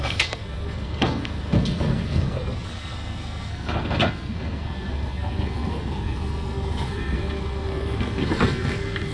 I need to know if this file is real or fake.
fake